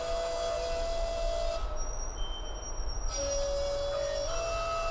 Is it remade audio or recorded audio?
recorded